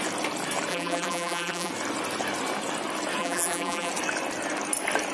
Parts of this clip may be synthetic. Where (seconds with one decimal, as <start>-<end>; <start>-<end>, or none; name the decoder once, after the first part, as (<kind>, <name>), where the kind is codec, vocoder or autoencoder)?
0.7-1.7 (vocoder, BigVGAN v2); 3.2-3.9